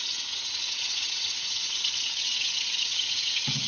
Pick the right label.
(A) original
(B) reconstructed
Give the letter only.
B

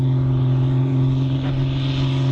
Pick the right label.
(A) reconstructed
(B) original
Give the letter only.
B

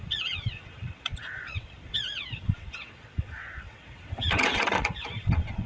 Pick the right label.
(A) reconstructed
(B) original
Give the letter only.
A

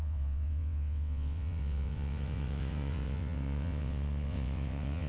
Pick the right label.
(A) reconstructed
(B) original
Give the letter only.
A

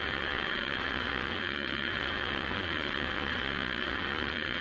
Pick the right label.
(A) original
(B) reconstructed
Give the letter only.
B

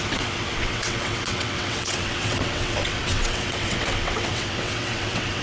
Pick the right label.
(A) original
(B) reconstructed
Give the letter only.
B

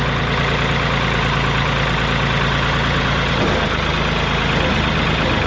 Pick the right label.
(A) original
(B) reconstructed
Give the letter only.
A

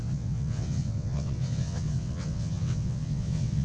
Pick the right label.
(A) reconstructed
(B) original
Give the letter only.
A